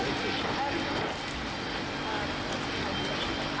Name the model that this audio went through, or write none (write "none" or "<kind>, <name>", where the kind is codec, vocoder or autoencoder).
none